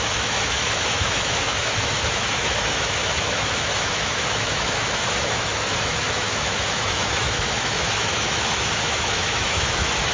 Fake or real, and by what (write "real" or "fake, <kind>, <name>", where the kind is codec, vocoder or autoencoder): fake, autoencoder, DAC-VAE